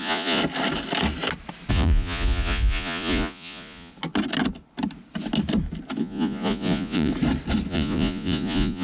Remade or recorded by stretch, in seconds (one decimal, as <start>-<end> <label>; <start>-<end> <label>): 0.0-0.4 remade; 0.4-1.7 recorded; 1.7-3.9 remade; 3.9-6.0 recorded; 6.0-7.1 remade; 7.1-7.7 recorded; 7.7-8.8 remade